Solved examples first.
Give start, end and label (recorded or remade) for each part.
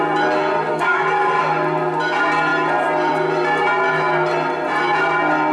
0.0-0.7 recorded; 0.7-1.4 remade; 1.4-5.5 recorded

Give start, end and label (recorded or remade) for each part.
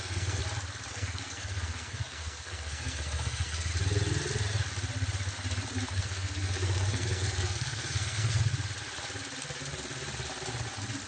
0.0-0.4 remade; 0.4-0.9 recorded; 0.9-3.7 remade; 3.7-5.9 recorded; 5.9-8.5 remade; 8.5-11.1 recorded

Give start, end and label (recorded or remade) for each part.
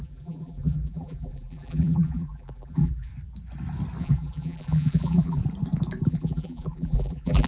0.0-3.1 remade; 3.1-4.0 recorded; 4.0-5.4 remade; 5.4-6.1 recorded; 6.1-7.5 remade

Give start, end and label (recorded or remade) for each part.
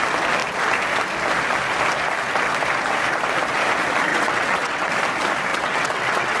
0.0-4.1 recorded; 4.1-4.9 remade; 4.9-5.5 recorded; 5.5-6.4 remade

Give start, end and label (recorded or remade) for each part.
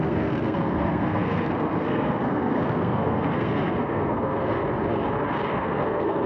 0.0-4.6 remade; 4.6-5.5 recorded; 5.5-6.3 remade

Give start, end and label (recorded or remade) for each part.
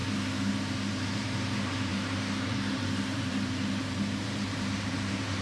0.0-0.9 recorded; 0.9-5.4 remade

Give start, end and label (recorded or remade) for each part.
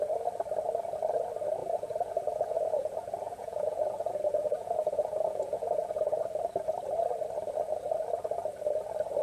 0.0-1.6 recorded; 1.6-6.4 remade; 6.4-9.2 recorded